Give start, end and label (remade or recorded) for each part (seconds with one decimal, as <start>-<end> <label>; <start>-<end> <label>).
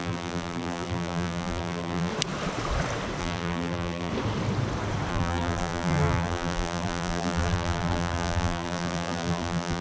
0.0-2.1 remade; 2.1-3.2 recorded; 3.2-4.1 remade; 4.1-5.1 recorded; 5.1-9.8 remade